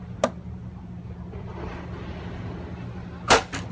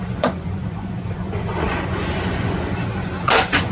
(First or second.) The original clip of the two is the first